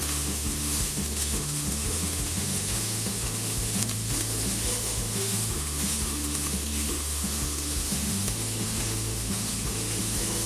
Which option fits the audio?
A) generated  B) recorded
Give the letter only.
A